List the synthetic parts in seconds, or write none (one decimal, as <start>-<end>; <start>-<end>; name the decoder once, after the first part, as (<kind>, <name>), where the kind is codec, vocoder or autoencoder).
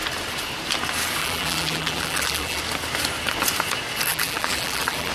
1.2-2.6 (vocoder, BigVGAN v2); 4.1-5.1